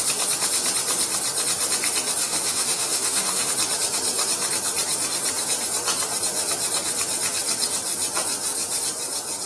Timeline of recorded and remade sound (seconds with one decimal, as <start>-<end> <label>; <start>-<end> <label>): 0.0-2.2 recorded; 2.2-3.5 remade; 3.5-9.5 recorded